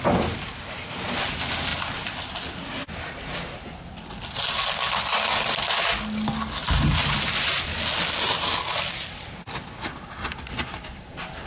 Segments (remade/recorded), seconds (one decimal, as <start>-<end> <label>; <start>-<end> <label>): 0.0-11.5 recorded